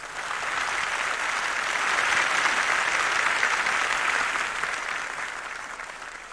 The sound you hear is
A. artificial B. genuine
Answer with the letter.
B